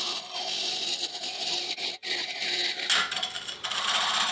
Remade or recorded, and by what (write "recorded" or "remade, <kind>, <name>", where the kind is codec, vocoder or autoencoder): recorded